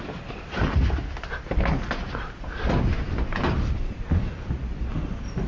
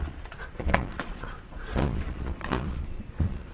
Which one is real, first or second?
first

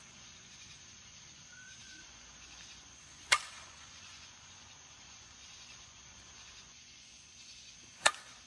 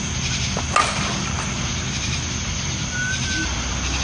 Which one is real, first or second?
second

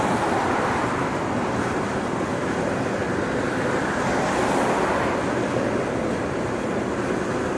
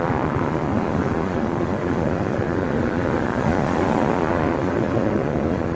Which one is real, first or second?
first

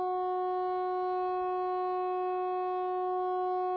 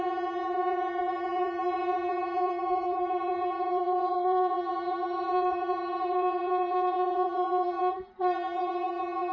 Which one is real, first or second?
first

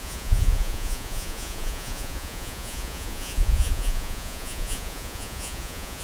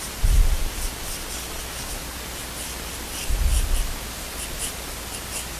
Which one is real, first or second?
second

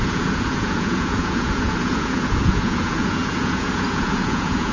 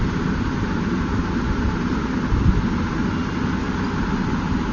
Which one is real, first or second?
second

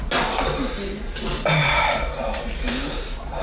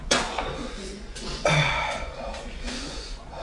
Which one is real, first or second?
first